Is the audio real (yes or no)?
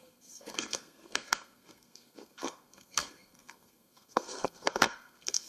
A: no